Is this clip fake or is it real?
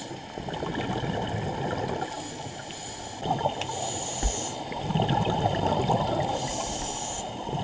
real